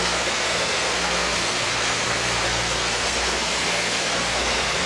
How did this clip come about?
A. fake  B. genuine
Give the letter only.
A